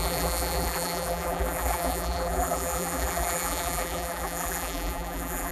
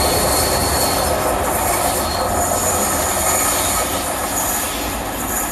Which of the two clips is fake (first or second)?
first